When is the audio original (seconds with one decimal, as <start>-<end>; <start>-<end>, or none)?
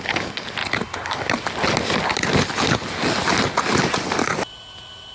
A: 0.0-5.1